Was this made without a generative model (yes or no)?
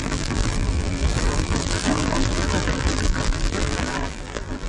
no